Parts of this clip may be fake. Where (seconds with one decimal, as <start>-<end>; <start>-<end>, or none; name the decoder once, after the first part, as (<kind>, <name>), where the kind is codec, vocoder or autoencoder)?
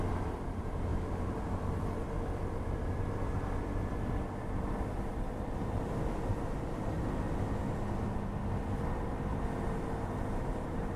0.0-0.9 (vocoder, BigVGAN v2); 1.5-6.3; 8.0-11.0